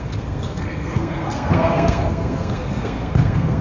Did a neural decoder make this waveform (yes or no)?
yes